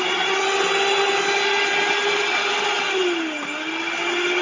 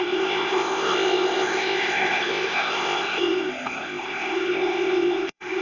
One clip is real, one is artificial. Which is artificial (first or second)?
second